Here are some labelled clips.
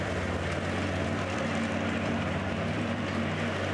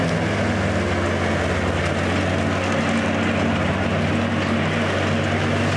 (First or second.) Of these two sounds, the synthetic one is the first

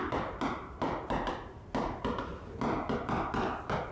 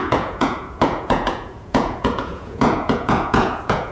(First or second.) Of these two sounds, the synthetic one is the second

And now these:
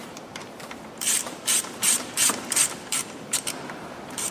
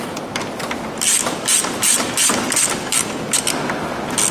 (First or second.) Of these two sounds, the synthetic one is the first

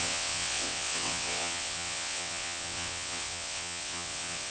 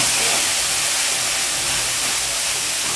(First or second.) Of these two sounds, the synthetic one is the first